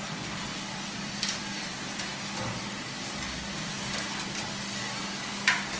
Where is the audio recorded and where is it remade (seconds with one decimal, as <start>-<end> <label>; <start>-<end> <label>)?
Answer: 0.0-0.5 recorded; 0.5-1.6 remade; 1.6-5.8 recorded